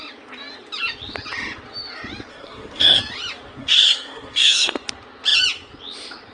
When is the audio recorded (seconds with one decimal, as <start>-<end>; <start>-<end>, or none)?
0.0-2.3; 3.0-3.6; 4.7-6.3